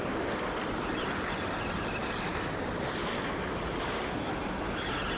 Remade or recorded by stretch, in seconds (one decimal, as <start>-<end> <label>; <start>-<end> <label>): 0.0-5.2 recorded